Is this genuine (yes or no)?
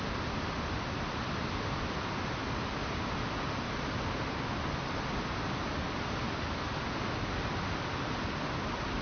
yes